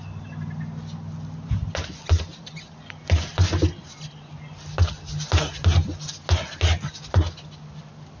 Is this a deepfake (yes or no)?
no